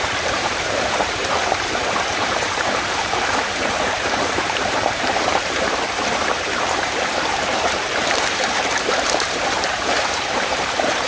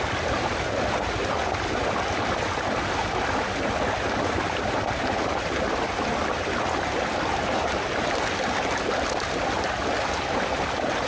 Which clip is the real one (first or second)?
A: second